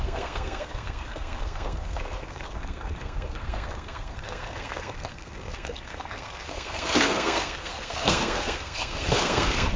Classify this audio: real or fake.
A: fake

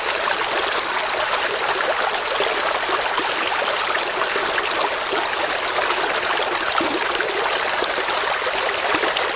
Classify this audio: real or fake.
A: real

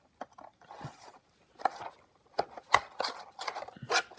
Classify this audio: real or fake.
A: real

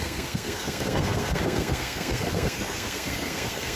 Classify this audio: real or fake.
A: fake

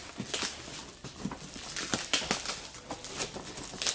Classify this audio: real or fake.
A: real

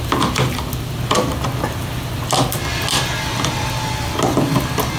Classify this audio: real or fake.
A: real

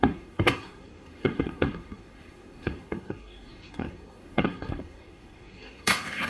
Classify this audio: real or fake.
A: fake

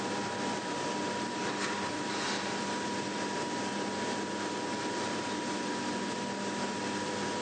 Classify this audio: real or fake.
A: real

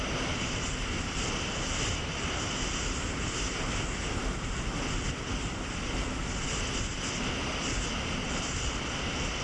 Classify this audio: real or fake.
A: real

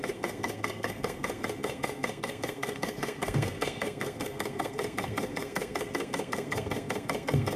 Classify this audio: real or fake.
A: fake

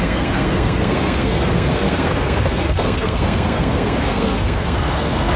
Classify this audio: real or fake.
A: fake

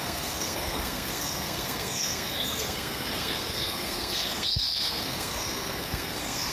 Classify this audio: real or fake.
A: fake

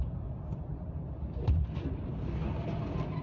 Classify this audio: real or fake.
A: real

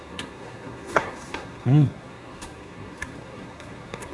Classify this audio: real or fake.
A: fake